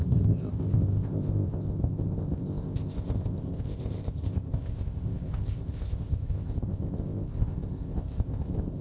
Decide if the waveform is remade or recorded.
remade